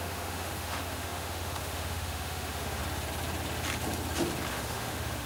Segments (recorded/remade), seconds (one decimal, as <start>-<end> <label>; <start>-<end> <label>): 0.0-2.8 remade; 2.8-4.5 recorded; 4.5-5.3 remade